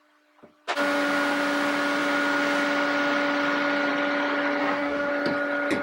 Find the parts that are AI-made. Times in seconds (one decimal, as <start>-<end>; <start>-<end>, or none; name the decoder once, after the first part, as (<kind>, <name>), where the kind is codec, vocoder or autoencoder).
4.6-5.1 (codec, DAC)